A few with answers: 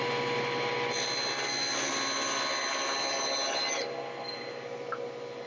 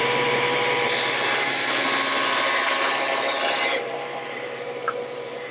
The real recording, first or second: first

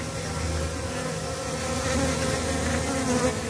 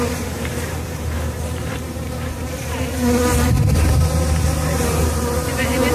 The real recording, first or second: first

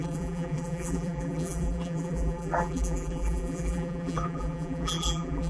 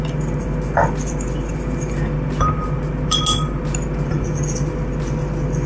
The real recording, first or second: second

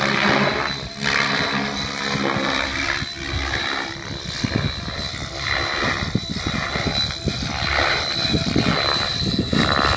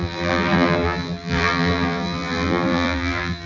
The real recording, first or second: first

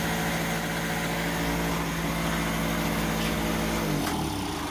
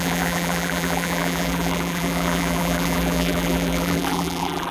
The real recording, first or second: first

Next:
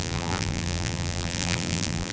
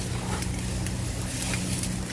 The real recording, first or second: second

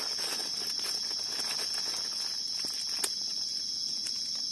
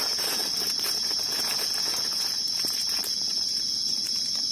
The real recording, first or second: first